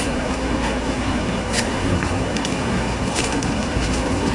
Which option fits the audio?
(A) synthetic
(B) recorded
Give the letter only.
A